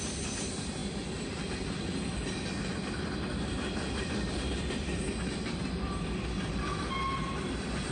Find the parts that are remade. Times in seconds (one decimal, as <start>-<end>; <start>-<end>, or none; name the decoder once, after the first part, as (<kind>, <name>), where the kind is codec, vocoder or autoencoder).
0.0-7.9 (vocoder, BigVGAN v2)